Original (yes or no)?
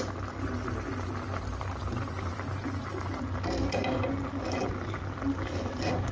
yes